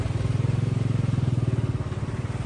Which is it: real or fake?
real